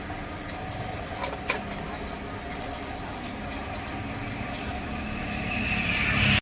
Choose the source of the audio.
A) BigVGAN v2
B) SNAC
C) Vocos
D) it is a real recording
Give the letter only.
D